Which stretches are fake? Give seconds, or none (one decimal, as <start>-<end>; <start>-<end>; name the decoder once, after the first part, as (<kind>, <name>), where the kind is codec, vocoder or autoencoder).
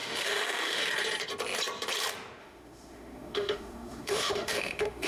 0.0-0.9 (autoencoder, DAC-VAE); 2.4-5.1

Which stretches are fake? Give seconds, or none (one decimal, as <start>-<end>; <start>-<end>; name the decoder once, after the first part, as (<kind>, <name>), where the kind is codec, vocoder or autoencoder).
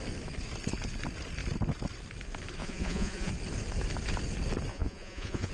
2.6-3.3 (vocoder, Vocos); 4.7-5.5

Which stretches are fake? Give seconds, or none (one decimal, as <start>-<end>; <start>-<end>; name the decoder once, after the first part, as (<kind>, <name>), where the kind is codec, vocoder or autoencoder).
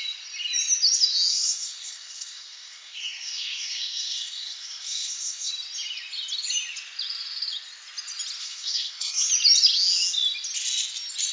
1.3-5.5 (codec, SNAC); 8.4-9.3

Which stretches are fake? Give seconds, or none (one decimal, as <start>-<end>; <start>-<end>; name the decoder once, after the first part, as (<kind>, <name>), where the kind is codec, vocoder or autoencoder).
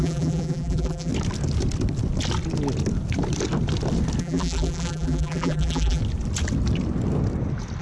0.0-1.1 (vocoder, BigVGAN v2); 4.2-6.0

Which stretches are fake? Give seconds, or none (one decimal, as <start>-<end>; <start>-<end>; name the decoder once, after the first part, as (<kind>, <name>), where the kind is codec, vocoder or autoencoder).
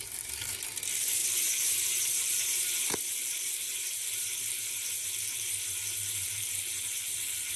0.0-7.6 (vocoder, BigVGAN v2)